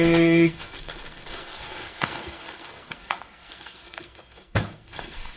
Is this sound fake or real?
fake